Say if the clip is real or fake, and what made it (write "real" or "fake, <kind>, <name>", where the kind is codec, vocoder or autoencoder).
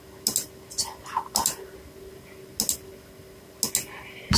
real